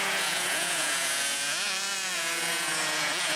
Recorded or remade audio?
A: remade